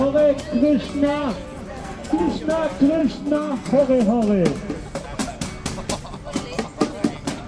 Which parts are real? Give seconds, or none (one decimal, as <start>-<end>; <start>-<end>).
0.0-1.8; 2.4-3.0; 3.8-7.5